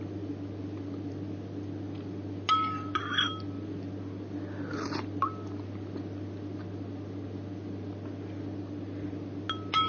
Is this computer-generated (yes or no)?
no